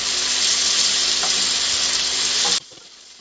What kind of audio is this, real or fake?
fake